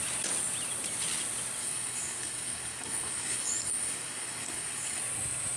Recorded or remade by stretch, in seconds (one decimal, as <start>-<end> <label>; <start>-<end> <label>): 0.0-1.6 recorded; 1.6-5.0 remade; 5.0-5.6 recorded